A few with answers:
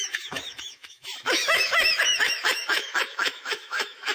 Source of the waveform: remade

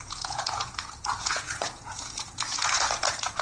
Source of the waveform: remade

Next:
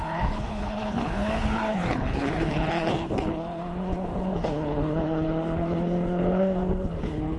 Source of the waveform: remade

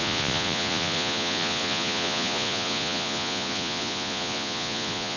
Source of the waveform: remade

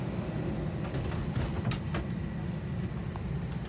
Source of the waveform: recorded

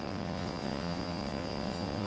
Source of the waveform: remade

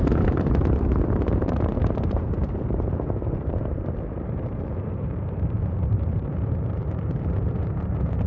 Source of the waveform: remade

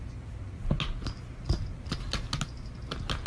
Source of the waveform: recorded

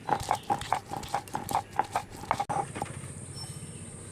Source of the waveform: recorded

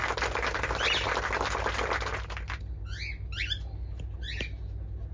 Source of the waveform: recorded